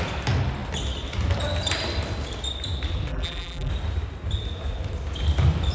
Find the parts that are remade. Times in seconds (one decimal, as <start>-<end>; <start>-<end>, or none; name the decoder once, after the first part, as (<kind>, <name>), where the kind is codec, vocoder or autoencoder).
3.1-3.7 (vocoder, BigVGAN v2)